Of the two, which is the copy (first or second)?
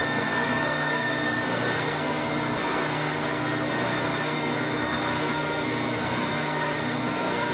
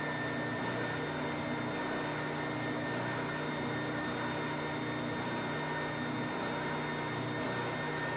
first